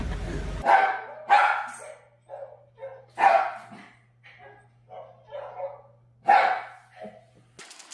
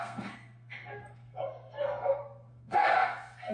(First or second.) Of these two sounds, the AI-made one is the second